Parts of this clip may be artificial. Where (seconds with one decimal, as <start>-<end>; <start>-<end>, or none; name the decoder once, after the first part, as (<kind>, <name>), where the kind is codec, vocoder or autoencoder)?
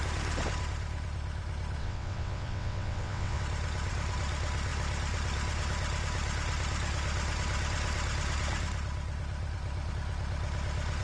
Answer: 1.8-3.4 (vocoder, WaveNeXt)